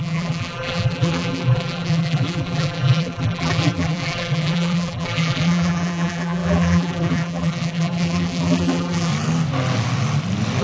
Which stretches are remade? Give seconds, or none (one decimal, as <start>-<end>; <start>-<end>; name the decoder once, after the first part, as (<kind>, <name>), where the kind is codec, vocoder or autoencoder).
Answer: 0.0-9.1 (vocoder, BigVGAN v2)